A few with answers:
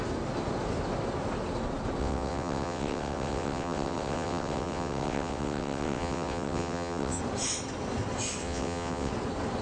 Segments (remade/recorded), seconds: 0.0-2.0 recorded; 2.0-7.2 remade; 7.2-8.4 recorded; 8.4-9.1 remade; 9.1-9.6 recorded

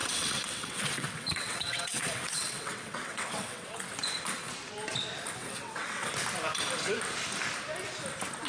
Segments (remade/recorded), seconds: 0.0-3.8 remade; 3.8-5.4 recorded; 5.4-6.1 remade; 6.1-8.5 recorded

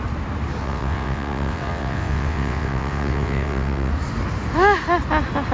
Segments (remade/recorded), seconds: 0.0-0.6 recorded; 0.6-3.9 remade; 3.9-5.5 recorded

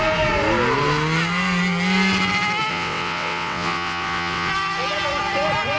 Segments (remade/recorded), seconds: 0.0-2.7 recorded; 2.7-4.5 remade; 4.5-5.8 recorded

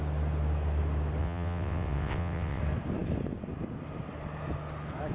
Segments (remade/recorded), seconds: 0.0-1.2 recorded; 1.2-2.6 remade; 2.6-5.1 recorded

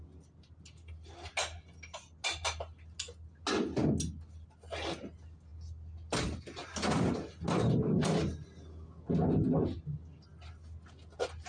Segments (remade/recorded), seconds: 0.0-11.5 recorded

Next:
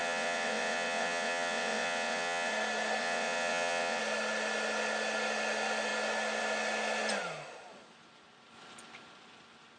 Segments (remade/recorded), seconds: 0.0-2.5 remade; 2.5-3.0 recorded; 3.0-4.0 remade; 4.0-9.8 recorded

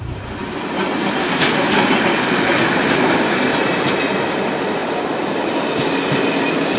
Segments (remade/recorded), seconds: 0.0-6.8 recorded